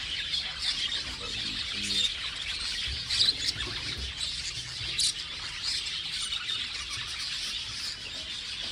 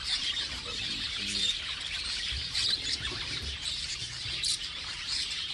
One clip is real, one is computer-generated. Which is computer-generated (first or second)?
second